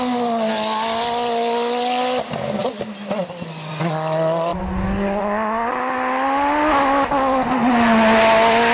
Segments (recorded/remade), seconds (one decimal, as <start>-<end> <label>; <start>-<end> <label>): 0.0-8.7 recorded

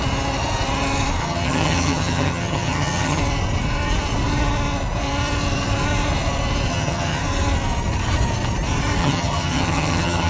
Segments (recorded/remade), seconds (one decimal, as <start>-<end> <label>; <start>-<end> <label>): 0.0-1.2 recorded; 1.2-3.2 remade; 3.2-6.7 recorded; 6.7-7.2 remade; 7.2-9.0 recorded; 9.0-10.3 remade

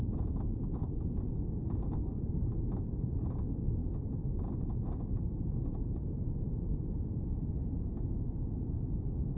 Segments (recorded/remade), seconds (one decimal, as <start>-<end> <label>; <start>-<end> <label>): 0.0-0.8 recorded; 0.8-2.6 remade; 2.6-9.4 recorded